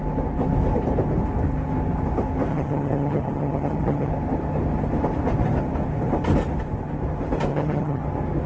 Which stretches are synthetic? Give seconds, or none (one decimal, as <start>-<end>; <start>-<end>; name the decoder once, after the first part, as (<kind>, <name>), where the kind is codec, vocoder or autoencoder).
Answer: 2.5-4.1 (vocoder, HiFi-GAN); 7.5-8.0